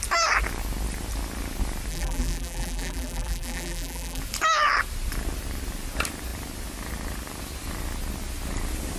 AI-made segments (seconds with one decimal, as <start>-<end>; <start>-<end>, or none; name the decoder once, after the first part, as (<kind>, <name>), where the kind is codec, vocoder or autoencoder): 1.9-4.2 (vocoder, BigVGAN v2)